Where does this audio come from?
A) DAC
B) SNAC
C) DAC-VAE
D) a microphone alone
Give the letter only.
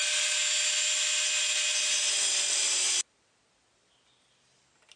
D